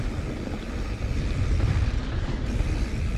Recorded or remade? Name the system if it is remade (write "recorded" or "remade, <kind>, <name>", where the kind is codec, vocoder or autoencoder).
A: recorded